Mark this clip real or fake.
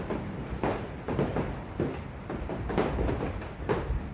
fake